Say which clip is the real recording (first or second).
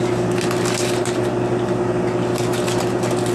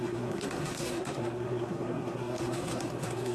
first